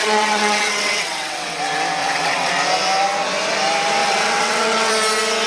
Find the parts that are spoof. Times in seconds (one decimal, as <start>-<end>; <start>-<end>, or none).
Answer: 0.0-1.6; 2.0-2.5; 4.0-4.9